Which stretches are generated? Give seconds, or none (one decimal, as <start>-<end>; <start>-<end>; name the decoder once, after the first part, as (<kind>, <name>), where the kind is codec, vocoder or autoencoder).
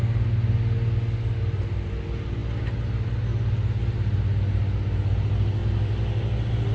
none